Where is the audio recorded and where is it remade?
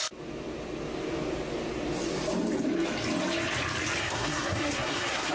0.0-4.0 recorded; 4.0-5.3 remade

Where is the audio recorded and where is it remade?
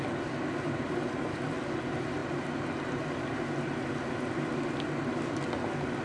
0.0-6.0 recorded